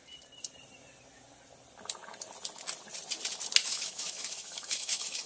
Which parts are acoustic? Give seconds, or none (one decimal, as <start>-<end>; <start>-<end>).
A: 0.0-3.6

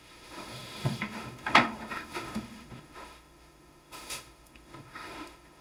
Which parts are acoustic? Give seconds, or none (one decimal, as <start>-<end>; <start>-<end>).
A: none

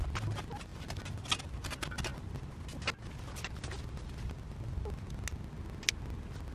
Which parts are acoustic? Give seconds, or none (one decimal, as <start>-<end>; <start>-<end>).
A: 0.0-6.5